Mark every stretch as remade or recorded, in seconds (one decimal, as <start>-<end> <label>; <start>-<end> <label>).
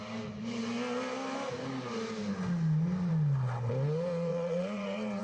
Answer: 0.0-4.3 recorded; 4.3-5.2 remade